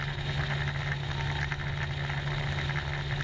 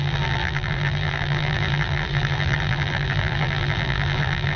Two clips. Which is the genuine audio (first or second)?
first